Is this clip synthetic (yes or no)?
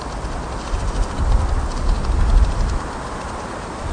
no